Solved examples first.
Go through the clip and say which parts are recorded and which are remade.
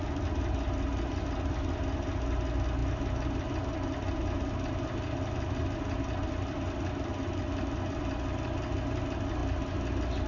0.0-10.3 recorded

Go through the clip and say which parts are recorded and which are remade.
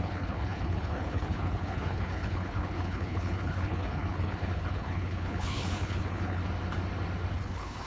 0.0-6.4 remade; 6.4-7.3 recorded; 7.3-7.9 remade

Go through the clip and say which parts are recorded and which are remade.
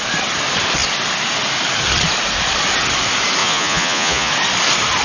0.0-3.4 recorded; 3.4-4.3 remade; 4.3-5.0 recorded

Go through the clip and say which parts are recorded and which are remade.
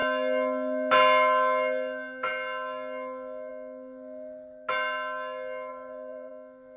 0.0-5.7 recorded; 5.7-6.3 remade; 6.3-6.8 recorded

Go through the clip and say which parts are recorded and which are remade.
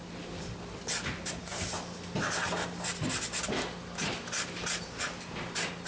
0.0-5.9 recorded